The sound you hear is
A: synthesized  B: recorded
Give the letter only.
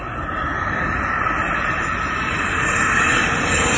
A